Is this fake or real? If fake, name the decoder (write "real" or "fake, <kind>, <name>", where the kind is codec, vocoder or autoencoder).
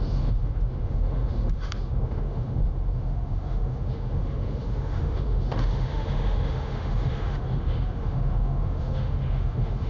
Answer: fake, autoencoder, DAC-VAE